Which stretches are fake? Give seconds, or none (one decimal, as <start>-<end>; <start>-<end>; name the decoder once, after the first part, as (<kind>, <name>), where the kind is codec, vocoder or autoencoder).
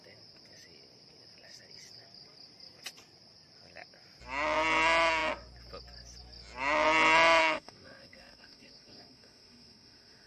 7.4-10.3 (autoencoder, DAC-VAE)